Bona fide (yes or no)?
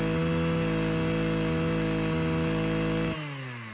yes